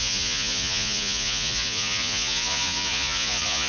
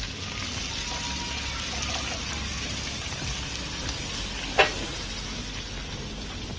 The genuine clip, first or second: second